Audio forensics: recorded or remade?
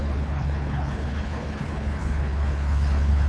remade